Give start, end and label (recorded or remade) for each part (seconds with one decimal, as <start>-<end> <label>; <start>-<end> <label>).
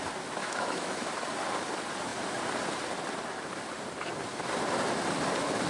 0.0-0.4 recorded; 0.4-1.1 remade; 1.1-5.7 recorded